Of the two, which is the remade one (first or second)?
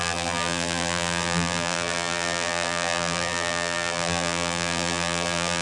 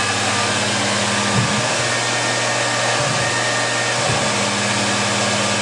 first